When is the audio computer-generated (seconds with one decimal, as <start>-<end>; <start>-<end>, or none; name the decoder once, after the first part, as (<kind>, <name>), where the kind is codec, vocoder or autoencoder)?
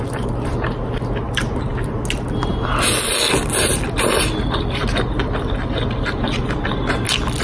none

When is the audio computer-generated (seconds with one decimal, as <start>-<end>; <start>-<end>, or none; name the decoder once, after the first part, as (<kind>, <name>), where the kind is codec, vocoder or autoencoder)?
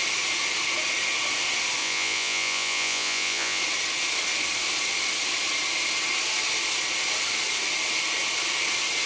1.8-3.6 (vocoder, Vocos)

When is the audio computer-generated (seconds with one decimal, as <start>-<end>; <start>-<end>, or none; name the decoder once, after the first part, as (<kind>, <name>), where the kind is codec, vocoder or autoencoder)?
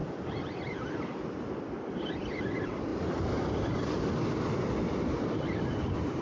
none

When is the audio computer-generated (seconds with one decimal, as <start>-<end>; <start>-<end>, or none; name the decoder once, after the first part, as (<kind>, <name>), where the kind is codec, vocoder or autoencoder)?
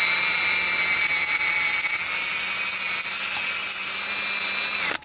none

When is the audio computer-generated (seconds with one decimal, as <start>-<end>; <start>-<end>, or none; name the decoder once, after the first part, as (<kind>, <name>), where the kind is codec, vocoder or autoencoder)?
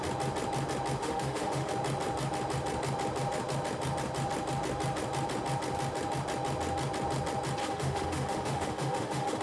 1.0-1.7 (autoencoder, DAC-VAE); 7.6-9.4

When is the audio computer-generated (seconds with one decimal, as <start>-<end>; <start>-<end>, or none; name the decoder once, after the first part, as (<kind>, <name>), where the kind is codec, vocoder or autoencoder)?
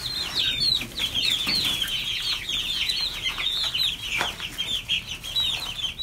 1.4-3.7 (vocoder, Vocos)